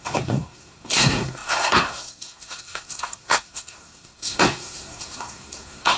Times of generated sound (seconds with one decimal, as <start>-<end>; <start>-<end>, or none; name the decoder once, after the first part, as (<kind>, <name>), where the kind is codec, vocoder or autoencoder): 0.0-6.0 (codec, SNAC)